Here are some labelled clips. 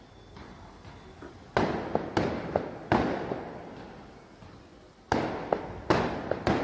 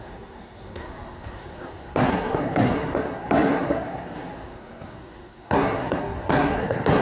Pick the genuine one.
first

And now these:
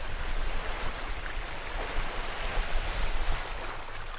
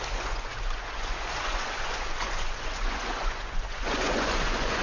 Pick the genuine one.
first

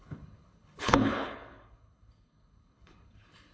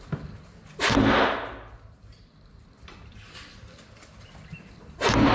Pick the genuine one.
second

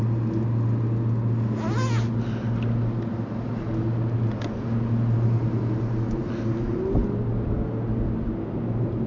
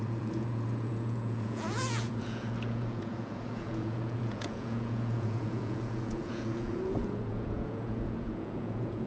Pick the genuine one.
first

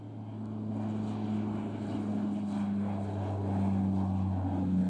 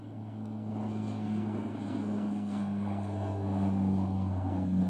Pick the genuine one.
first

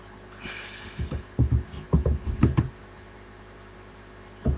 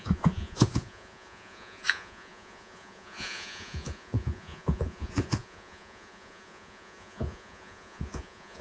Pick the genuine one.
first